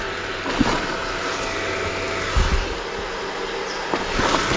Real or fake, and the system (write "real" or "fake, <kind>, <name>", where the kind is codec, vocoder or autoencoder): real